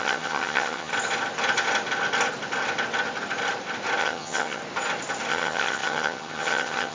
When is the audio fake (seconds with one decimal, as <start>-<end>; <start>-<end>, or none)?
0.0-0.9; 4.0-4.6; 5.3-6.9